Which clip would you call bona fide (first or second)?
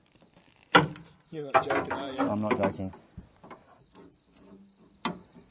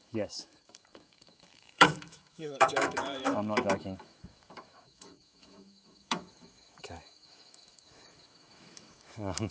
first